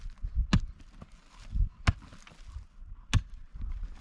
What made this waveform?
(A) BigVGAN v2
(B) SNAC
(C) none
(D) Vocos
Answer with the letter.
C